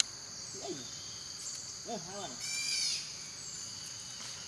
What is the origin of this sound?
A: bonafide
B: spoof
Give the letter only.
A